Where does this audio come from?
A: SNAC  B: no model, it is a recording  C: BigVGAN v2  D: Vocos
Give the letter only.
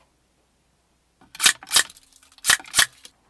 B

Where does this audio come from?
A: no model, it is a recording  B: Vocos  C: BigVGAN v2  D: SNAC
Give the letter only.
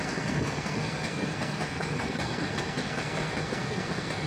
D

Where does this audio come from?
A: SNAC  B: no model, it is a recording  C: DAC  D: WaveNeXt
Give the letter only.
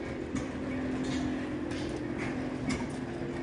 B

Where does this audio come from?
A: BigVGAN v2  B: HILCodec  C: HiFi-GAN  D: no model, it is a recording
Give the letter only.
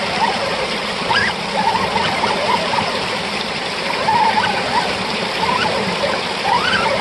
A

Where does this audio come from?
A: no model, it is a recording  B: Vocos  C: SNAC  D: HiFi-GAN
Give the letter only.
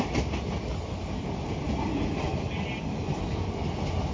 A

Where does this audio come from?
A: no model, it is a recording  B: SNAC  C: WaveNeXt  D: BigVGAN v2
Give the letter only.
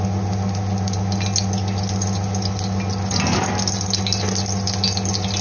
A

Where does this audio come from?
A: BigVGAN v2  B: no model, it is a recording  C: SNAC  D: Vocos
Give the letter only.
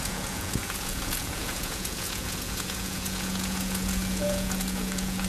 D